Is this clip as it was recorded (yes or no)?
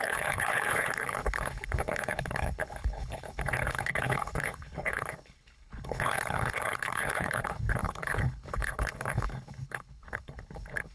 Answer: no